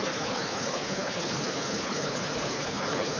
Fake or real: fake